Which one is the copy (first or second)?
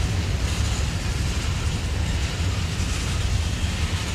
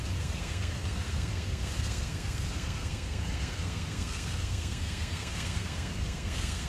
second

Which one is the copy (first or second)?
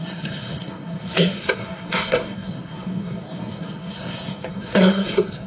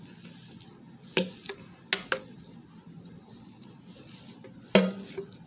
first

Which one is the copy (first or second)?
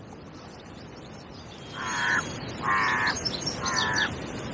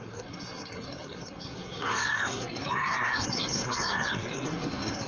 second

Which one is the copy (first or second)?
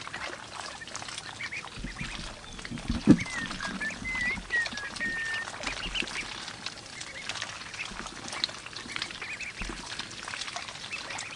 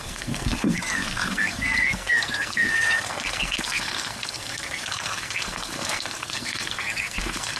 second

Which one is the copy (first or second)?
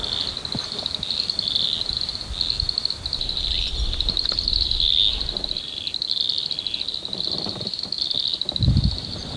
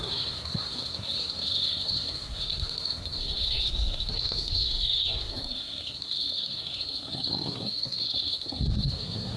second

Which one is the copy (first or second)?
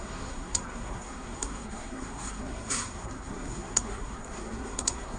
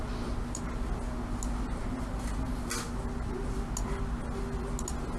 first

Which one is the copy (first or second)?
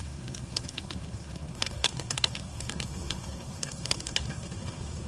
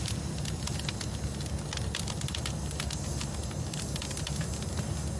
first